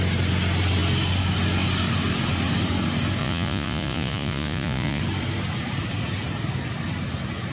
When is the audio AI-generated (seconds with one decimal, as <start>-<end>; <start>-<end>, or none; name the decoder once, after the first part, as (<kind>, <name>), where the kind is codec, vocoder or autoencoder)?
3.2-5.0 (vocoder, Vocos)